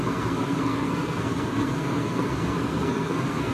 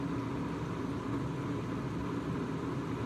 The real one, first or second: second